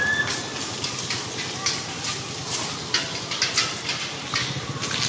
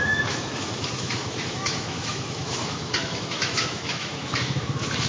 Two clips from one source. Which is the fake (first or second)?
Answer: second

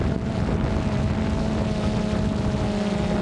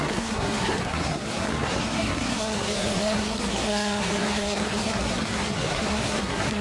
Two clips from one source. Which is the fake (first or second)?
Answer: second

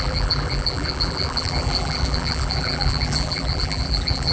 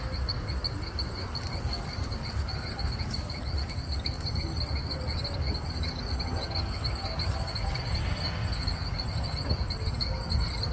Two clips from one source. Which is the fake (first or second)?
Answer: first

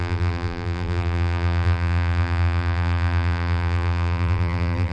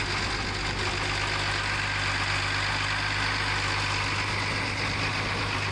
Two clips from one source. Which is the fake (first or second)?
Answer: first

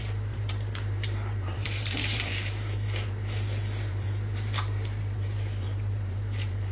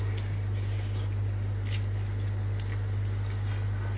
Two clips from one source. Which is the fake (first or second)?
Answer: first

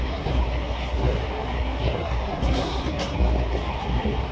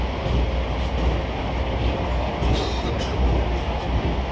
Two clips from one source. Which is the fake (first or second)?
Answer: first